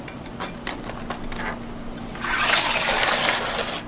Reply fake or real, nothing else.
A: real